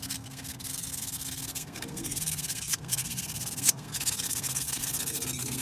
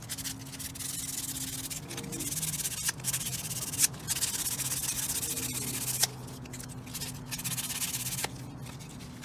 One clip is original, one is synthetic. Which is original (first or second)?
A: second